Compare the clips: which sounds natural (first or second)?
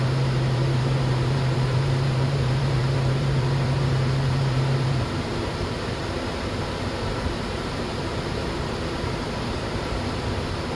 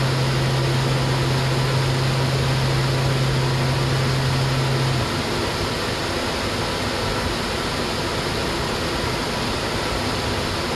second